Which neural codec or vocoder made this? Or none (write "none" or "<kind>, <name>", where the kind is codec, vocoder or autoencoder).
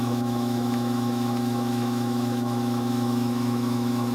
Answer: autoencoder, DAC-VAE